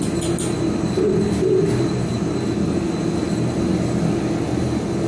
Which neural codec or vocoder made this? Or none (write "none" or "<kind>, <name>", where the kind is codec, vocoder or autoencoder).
none